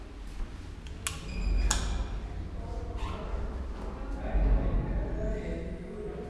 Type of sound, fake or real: real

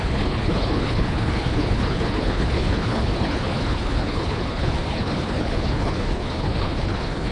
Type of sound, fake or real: fake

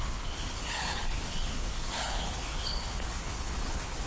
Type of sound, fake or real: fake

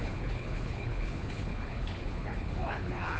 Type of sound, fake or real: fake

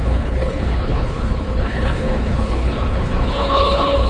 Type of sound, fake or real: fake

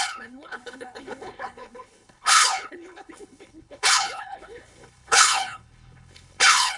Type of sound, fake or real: fake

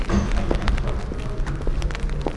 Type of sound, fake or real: real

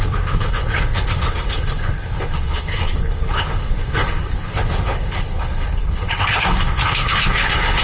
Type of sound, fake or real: fake